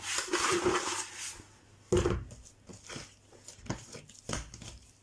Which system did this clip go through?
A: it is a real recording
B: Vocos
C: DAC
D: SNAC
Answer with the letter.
A